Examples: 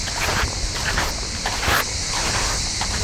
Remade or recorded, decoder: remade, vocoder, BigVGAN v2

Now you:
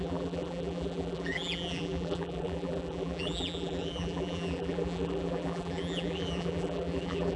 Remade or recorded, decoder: remade, vocoder, BigVGAN v2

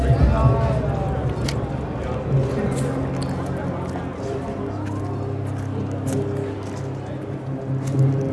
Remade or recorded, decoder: recorded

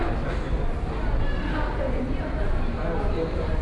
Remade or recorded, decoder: recorded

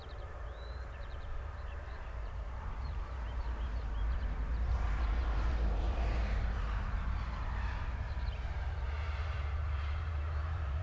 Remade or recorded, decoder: remade, vocoder, BigVGAN v2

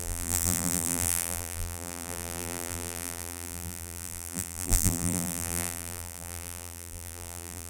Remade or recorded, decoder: remade, vocoder, BigVGAN v2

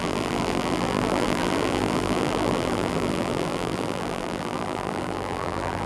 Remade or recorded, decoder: remade, vocoder, BigVGAN v2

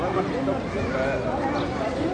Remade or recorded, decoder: recorded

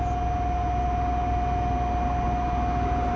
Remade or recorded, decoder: recorded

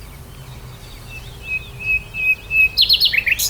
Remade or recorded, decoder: recorded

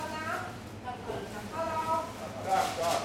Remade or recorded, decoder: remade, vocoder, BigVGAN v2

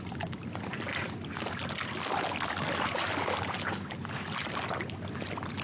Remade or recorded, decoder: recorded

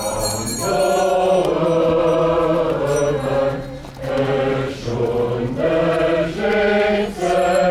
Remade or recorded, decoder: recorded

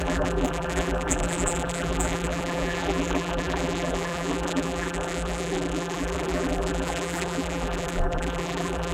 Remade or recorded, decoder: remade, vocoder, BigVGAN v2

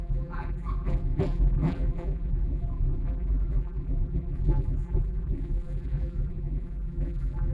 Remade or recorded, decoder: remade, vocoder, BigVGAN v2